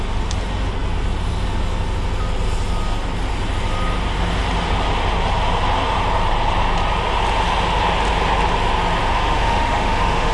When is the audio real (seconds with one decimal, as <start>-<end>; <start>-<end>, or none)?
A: 0.0-9.0